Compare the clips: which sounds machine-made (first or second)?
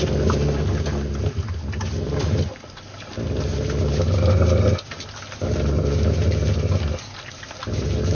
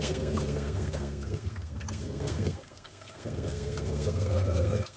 second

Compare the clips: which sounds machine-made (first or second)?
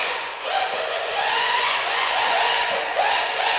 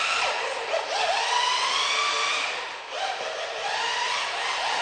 first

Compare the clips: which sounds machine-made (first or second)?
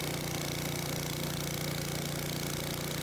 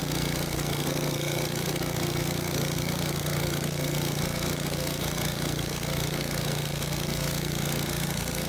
second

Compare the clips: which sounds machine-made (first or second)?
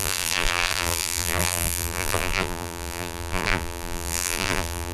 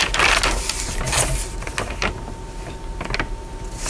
first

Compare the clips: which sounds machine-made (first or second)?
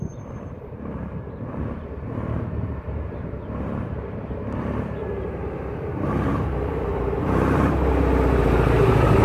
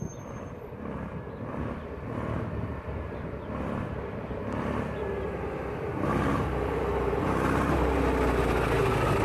first